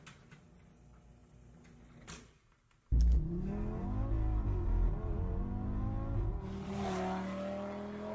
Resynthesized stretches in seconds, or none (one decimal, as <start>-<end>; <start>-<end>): none